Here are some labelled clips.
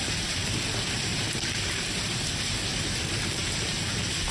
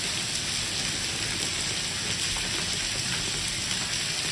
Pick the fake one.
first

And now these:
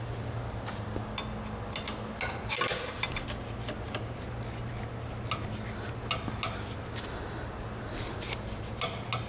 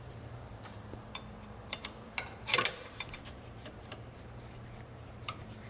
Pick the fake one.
second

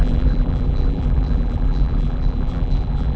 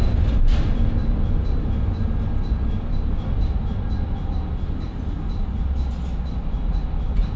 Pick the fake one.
first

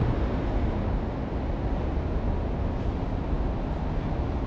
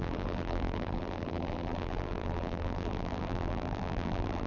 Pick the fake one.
second